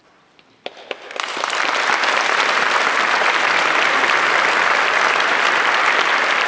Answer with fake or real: fake